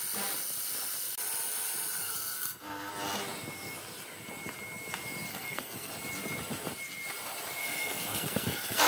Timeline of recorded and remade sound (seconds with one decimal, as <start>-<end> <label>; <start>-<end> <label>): 0.0-2.0 recorded; 2.0-2.9 remade; 2.9-5.3 recorded; 5.3-5.9 remade; 5.9-7.6 recorded; 7.6-8.9 remade